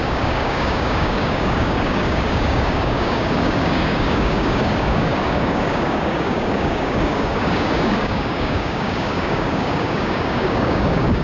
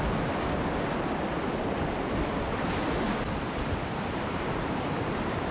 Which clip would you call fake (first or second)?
first